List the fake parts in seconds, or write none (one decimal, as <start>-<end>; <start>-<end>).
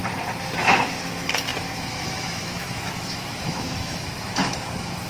0.6-5.1